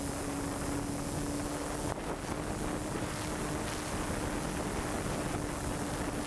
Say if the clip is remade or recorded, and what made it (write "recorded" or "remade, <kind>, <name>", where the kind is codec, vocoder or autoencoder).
recorded